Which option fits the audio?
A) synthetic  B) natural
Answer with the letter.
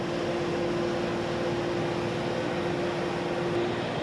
B